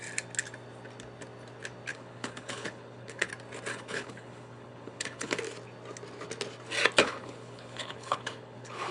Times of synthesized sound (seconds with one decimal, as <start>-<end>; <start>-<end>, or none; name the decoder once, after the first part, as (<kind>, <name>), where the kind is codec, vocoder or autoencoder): 1.9-3.3 (codec, HILCodec); 3.7-5.4; 7.0-8.9